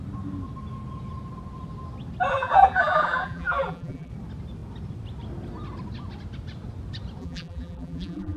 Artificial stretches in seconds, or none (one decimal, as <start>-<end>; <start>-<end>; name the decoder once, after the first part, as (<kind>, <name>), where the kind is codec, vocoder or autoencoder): 2.3-4.1 (vocoder, BigVGAN v2); 7.2-8.4